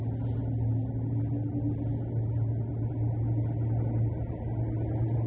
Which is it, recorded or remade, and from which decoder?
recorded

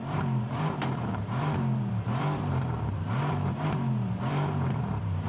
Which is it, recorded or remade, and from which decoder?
remade, vocoder, BigVGAN v2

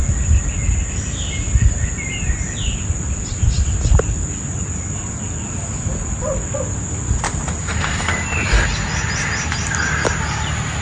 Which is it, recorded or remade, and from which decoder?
recorded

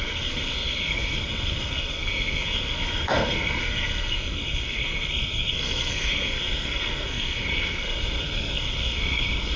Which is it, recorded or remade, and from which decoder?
remade, codec, SNAC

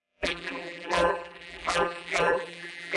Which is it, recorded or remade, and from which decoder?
remade, vocoder, BigVGAN v2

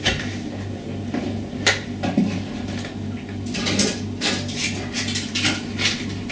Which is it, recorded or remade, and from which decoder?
recorded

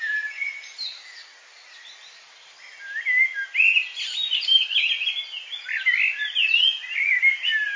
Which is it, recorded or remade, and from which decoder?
recorded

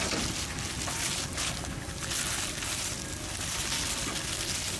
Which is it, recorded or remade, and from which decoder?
recorded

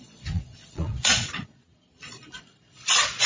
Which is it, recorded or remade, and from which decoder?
remade, vocoder, Vocos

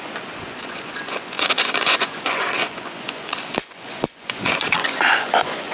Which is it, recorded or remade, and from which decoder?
remade, vocoder, Vocos